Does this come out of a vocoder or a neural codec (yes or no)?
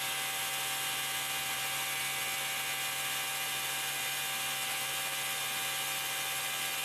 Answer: no